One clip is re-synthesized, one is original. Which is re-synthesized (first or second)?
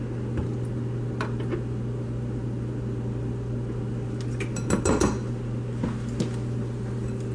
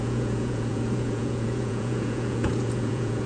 second